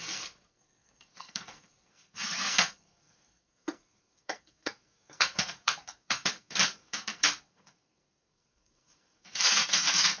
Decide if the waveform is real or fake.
fake